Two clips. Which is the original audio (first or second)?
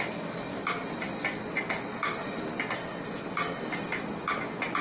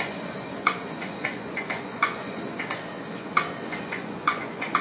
first